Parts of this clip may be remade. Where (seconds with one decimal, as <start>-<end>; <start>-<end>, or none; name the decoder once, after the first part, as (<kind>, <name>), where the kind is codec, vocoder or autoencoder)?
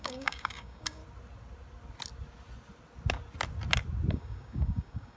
0.0-1.0 (codec, DAC); 4.1-5.2